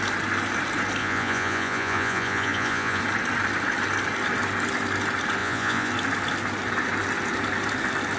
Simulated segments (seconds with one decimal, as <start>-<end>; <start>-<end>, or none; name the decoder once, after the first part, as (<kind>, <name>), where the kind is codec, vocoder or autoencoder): 1.0-3.0 (vocoder, Vocos); 5.4-5.9